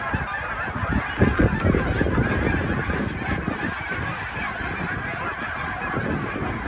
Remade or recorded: recorded